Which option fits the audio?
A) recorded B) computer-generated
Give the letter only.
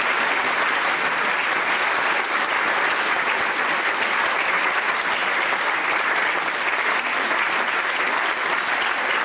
A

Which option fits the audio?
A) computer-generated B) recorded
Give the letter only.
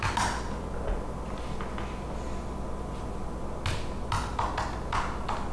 B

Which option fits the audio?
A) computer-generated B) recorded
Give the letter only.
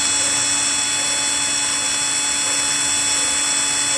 B